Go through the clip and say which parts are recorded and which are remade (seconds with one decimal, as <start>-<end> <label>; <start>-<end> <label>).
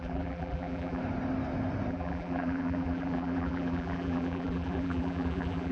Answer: 0.0-1.0 remade; 1.0-1.9 recorded; 1.9-5.7 remade